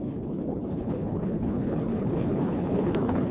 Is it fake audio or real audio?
fake